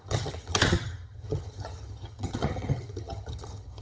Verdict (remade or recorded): remade